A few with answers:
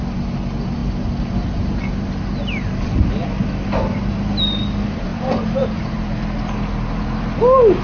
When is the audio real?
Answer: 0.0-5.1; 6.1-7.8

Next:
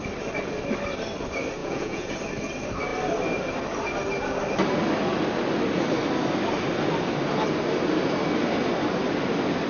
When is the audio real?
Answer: 0.0-1.6; 2.1-9.7

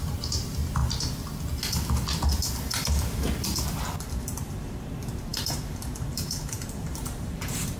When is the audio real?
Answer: 0.8-4.1

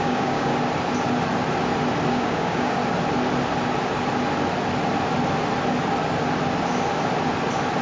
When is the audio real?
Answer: 0.5-2.1; 2.8-7.8

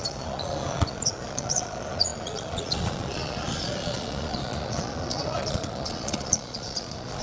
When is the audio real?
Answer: none

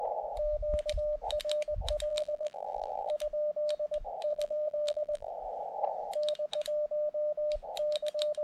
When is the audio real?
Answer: 0.0-2.1; 3.1-4.3; 5.3-8.4

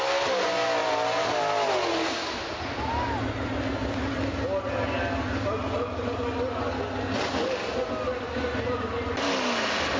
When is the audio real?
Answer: 0.0-10.0